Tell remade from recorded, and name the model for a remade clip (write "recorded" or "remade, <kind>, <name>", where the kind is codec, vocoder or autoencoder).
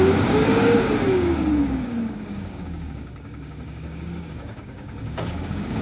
remade, codec, DAC